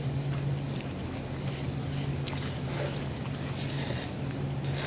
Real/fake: real